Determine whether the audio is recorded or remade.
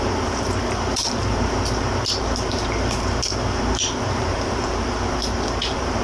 remade